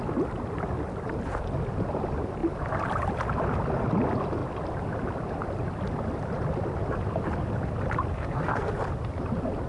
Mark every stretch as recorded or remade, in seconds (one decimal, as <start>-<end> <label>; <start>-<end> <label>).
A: 0.0-8.1 recorded; 8.1-8.7 remade; 8.7-9.7 recorded